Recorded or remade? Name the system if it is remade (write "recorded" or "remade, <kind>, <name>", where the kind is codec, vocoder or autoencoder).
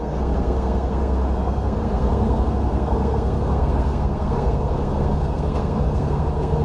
remade, codec, SNAC